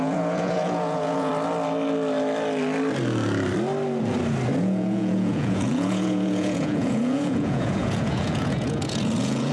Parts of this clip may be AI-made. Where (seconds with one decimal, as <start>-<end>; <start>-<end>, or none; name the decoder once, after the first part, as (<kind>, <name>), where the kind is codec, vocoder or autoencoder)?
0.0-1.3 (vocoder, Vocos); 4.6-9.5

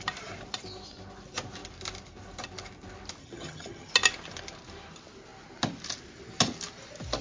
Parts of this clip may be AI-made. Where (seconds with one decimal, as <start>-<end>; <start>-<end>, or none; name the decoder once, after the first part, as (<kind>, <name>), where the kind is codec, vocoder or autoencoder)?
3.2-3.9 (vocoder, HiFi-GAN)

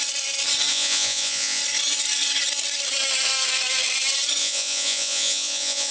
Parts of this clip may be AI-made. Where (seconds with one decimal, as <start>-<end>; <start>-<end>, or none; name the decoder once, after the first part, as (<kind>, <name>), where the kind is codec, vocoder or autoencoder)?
0.7-1.6 (vocoder, Vocos); 4.4-5.9